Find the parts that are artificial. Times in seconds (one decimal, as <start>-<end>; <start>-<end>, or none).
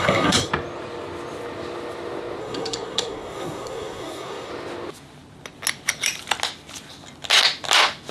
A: 0.0-0.5; 2.4-4.5